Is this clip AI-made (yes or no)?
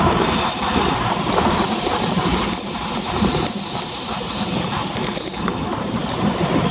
yes